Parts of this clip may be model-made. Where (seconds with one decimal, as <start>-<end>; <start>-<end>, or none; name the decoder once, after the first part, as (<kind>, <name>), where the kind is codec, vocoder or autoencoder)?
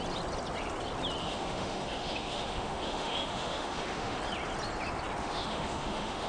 1.2-4.2 (autoencoder, DAC-VAE); 5.2-6.3